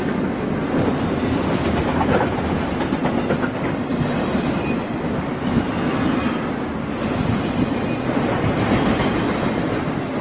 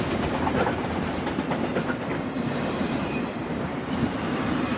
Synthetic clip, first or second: second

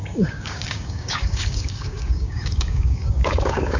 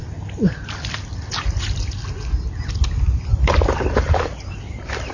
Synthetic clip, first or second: first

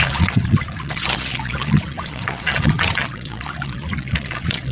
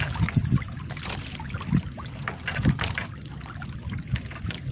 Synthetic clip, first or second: first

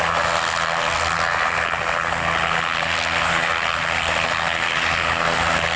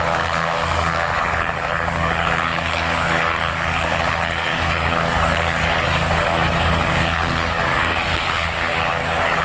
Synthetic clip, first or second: second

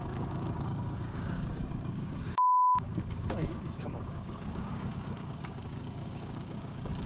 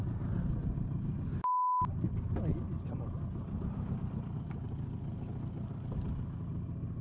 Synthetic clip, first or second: first